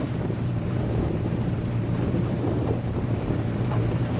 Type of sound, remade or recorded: remade